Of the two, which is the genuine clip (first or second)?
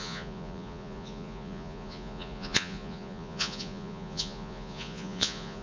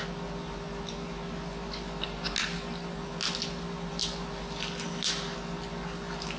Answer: second